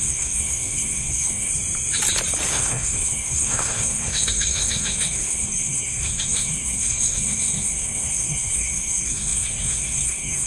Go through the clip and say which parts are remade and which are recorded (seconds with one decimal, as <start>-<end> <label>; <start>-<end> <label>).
0.0-1.5 remade; 1.5-2.5 recorded; 2.5-10.5 remade